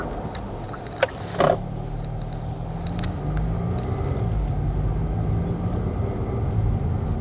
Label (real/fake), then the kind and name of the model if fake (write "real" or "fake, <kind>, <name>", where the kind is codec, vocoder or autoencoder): real